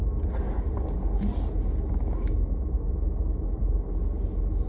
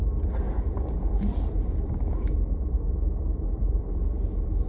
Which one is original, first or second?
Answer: first